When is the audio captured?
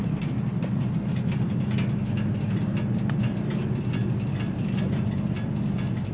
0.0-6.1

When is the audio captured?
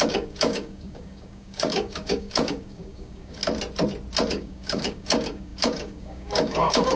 3.4-4.3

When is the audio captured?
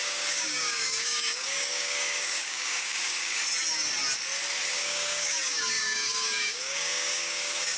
3.4-4.7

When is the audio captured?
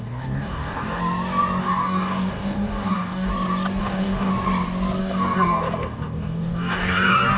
1.0-1.6; 3.3-3.8; 4.3-5.0